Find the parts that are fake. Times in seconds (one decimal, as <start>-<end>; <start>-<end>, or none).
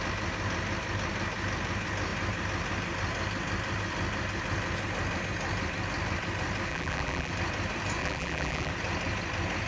6.7-7.3; 8.0-8.7